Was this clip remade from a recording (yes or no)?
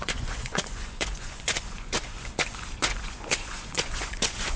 yes